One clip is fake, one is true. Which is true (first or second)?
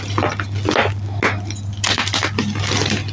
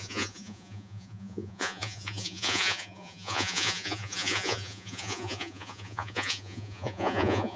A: first